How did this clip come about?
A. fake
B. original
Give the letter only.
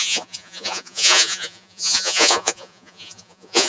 A